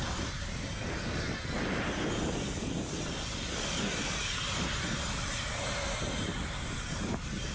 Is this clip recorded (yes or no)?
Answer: yes